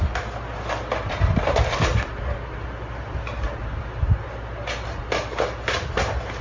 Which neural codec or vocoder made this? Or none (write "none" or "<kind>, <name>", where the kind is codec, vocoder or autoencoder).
none